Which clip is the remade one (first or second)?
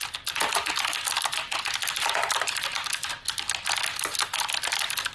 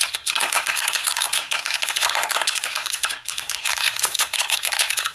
second